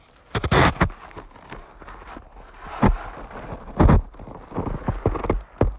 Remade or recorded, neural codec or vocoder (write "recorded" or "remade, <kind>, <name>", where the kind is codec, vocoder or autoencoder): recorded